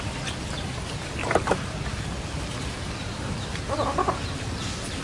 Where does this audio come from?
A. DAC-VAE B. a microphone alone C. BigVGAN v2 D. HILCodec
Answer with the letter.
B